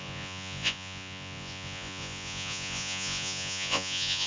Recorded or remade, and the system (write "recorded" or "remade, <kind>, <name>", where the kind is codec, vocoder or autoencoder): remade, vocoder, Vocos